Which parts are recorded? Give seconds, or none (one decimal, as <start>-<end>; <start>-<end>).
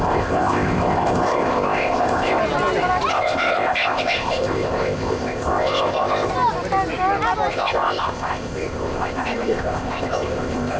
2.4-3.1; 6.3-7.5